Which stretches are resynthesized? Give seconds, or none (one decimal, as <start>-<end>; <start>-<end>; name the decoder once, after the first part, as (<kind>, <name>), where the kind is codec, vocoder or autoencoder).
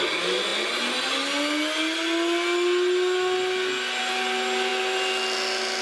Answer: none